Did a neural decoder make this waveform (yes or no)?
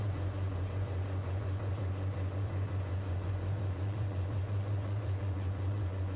yes